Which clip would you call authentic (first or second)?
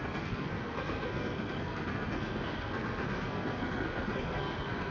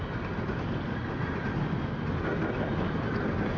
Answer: second